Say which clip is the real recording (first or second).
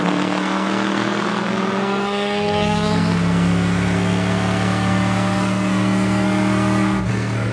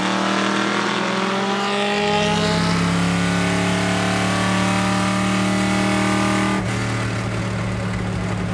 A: second